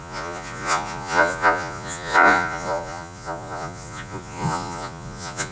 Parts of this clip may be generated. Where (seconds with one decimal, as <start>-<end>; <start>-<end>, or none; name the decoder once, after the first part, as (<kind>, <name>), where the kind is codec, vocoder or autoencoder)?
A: 0.0-5.5 (vocoder, Vocos)